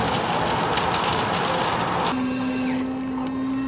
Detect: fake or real real